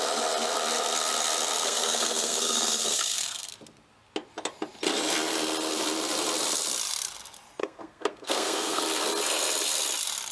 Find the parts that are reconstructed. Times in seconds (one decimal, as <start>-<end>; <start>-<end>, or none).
1.6-3.5; 7.6-8.8